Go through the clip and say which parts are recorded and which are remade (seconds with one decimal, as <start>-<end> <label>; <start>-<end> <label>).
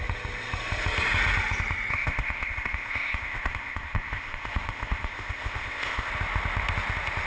0.0-1.9 recorded; 1.9-6.1 remade; 6.1-7.3 recorded